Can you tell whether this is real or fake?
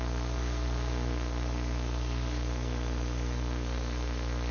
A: fake